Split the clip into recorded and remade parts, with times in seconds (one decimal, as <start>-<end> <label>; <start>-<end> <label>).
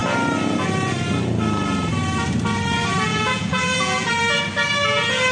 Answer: 0.0-3.1 recorded; 3.1-4.2 remade; 4.2-5.3 recorded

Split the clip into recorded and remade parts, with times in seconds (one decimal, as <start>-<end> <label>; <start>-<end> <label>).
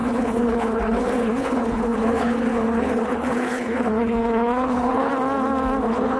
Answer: 0.0-5.1 remade; 5.1-5.8 recorded; 5.8-6.2 remade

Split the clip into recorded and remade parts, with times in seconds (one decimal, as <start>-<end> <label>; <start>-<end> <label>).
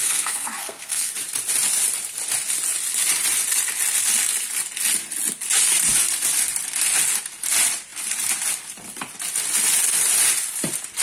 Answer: 0.0-1.1 remade; 1.1-11.0 recorded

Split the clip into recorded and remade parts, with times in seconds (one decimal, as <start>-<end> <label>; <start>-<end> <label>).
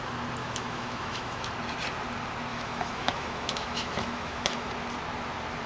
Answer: 0.0-0.4 recorded; 0.4-1.5 remade; 1.5-2.5 recorded; 2.5-4.7 remade; 4.7-5.7 recorded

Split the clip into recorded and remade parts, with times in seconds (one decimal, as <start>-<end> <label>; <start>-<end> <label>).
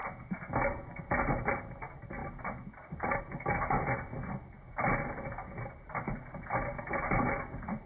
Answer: 0.0-7.9 recorded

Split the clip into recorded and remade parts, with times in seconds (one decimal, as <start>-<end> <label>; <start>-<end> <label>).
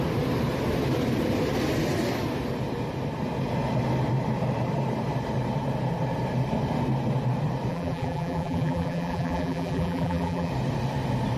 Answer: 0.0-7.7 recorded; 7.7-10.5 remade; 10.5-11.4 recorded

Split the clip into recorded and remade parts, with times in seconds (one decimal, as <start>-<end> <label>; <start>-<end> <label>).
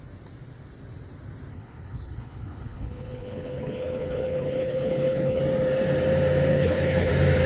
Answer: 0.0-1.5 recorded; 1.5-5.4 remade; 5.4-6.5 recorded; 6.5-7.1 remade; 7.1-7.5 recorded